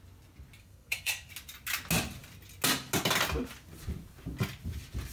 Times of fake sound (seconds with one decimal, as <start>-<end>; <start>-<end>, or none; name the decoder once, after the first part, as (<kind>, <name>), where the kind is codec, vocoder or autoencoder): 0.6-1.3 (codec, SNAC)